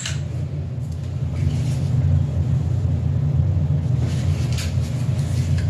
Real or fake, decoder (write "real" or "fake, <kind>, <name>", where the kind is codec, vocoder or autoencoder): real